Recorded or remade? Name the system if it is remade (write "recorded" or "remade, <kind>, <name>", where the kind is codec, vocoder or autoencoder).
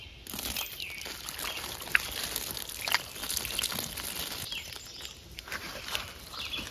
recorded